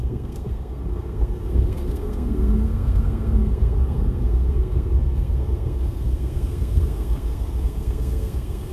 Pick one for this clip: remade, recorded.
remade